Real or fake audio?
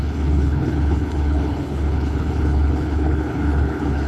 fake